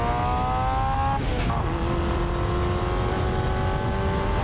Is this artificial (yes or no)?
no